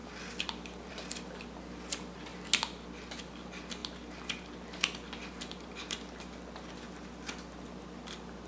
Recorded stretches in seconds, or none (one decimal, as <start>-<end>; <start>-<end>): 0.0-8.5